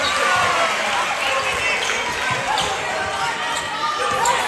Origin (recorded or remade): recorded